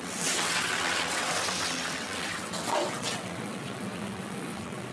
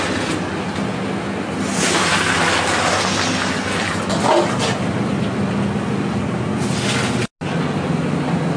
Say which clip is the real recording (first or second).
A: second